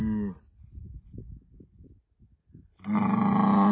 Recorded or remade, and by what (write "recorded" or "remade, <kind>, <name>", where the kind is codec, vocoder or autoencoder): recorded